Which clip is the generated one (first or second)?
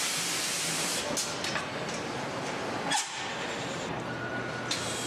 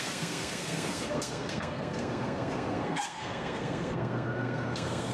second